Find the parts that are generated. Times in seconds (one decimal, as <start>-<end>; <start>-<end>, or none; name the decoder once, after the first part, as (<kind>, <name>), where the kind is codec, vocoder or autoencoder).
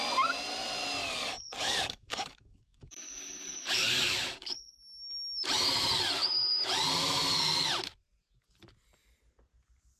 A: 1.0-4.8 (codec, DAC); 6.2-6.7